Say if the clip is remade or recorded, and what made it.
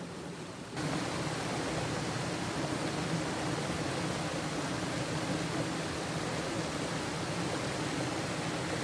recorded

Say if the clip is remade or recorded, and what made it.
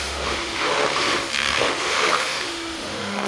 remade, autoencoder, DAC-VAE